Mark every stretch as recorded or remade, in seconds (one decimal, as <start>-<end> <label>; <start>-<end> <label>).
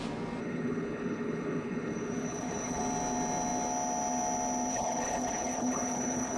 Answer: 0.0-0.4 recorded; 0.4-2.8 remade; 2.8-4.7 recorded; 4.7-6.4 remade